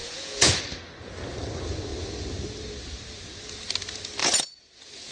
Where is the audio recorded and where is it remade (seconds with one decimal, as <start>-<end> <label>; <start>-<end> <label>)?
0.0-0.5 remade; 0.5-4.2 recorded; 4.2-5.1 remade